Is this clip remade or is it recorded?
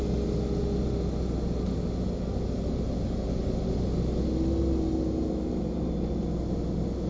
recorded